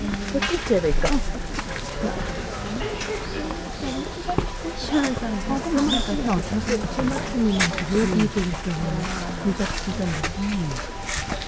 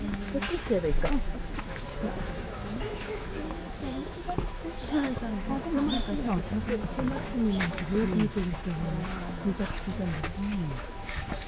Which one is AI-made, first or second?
second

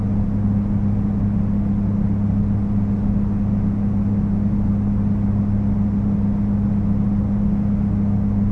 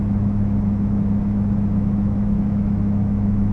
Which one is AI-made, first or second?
second